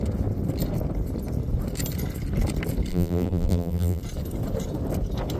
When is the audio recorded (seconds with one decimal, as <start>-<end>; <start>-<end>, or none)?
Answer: 0.0-2.9; 4.0-5.4